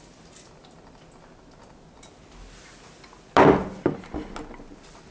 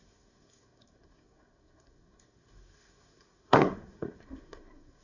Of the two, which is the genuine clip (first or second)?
first